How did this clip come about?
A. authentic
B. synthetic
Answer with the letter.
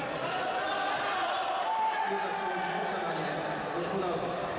A